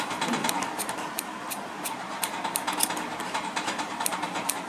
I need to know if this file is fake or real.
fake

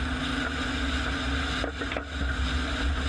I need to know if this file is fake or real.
real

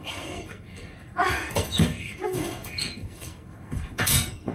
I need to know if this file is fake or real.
fake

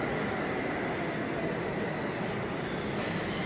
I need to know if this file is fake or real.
real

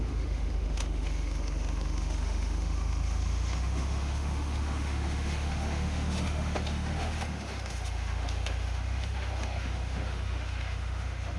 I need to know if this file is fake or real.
fake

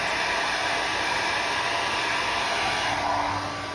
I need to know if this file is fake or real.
real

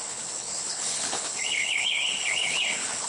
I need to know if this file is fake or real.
fake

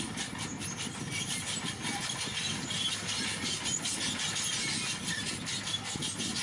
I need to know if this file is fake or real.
real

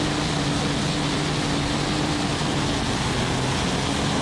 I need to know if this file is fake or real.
real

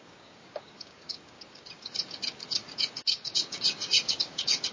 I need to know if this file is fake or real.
fake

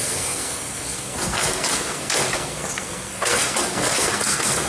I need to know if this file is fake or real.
fake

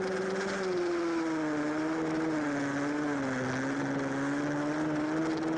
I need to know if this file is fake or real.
real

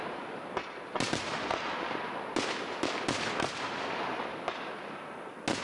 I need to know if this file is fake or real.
real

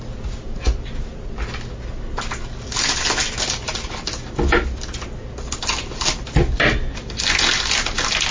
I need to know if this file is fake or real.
real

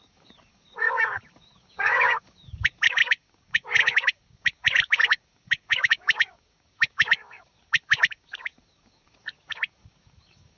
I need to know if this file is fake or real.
fake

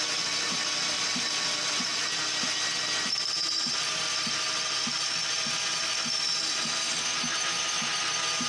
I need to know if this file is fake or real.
real